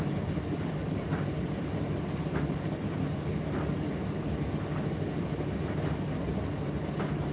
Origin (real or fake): real